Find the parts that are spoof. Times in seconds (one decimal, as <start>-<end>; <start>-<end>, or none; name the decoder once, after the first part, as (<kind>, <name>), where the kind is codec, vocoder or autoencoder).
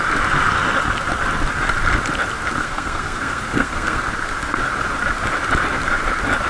2.6-4.0 (codec, SNAC)